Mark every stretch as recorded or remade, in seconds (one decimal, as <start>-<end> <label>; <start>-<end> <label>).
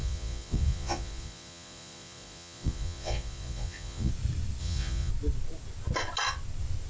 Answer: 0.0-4.1 remade; 4.1-4.6 recorded; 4.6-5.1 remade; 5.1-6.9 recorded